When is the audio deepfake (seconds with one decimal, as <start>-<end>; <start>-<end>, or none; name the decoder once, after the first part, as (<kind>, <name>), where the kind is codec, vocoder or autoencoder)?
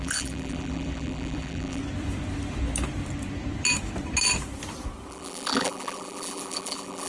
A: 0.0-1.8 (vocoder, BigVGAN v2); 5.1-7.1